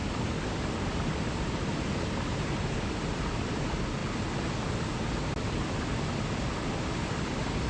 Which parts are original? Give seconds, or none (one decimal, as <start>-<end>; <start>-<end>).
0.0-7.7